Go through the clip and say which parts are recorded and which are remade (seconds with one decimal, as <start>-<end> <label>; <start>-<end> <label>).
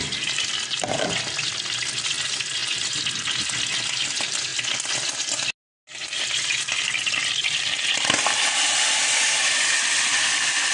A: 0.0-10.7 recorded